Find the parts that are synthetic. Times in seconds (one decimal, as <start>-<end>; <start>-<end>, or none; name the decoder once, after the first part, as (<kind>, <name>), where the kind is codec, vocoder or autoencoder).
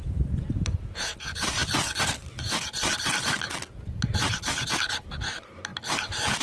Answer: 0.0-1.6 (vocoder, BigVGAN v2); 4.9-5.7